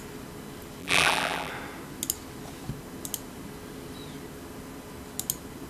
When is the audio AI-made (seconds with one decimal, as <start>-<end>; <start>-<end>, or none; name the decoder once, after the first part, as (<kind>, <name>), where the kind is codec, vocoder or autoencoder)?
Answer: 0.8-1.5 (vocoder, BigVGAN v2)